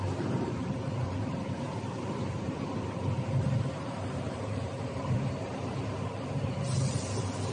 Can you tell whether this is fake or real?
fake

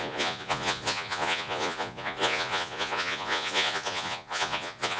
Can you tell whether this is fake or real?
fake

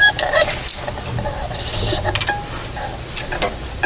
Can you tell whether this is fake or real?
real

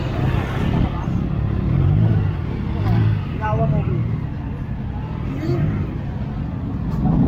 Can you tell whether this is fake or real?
real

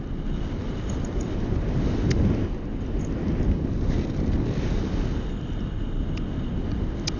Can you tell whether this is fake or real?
real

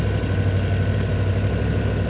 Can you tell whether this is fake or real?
real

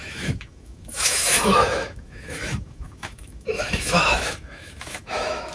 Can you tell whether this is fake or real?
fake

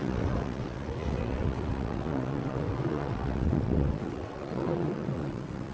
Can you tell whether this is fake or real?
fake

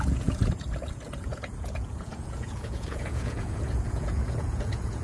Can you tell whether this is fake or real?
fake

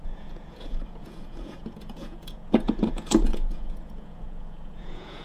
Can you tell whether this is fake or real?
fake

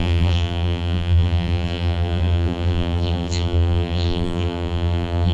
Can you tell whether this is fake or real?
fake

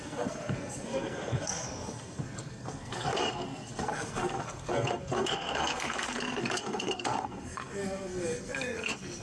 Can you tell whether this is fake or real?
fake